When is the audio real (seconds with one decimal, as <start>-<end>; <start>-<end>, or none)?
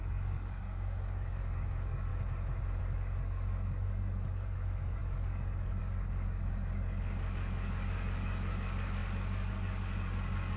2.1-2.8